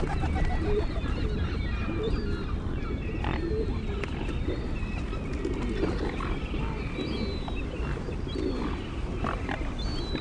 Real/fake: real